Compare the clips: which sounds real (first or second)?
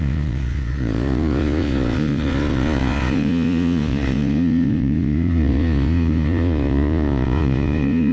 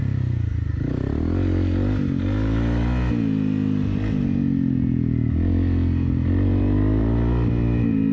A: second